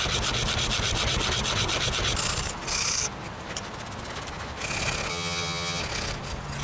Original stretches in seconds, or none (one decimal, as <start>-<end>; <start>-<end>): 0.0-5.1; 5.8-6.6